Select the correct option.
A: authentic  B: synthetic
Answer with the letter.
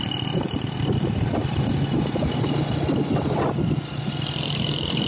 A